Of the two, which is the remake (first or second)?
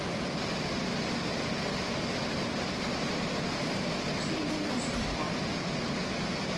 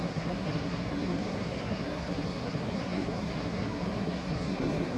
second